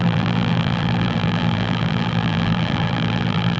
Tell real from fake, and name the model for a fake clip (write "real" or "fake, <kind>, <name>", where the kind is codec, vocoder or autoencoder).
fake, vocoder, BigVGAN v2